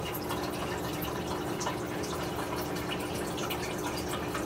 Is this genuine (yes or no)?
yes